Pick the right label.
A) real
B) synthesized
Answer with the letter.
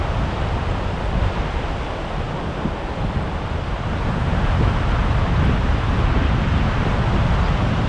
A